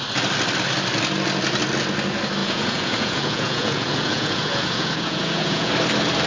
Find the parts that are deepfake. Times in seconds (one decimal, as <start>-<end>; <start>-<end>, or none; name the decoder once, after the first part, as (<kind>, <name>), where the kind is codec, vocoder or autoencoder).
2.4-5.7 (vocoder, Vocos)